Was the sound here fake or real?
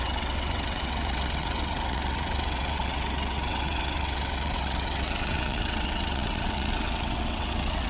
fake